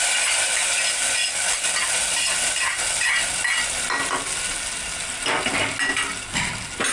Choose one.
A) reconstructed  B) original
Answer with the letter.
B